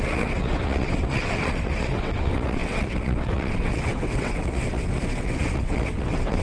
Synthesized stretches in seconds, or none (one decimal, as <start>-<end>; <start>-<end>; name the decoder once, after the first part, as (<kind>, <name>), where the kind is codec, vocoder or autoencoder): 0.0-6.4 (vocoder, WaveNeXt)